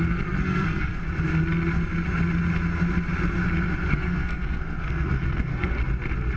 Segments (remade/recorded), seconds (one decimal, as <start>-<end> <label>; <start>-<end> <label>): 0.0-1.0 remade; 1.0-3.9 recorded; 3.9-5.8 remade; 5.8-6.4 recorded